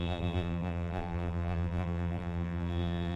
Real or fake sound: fake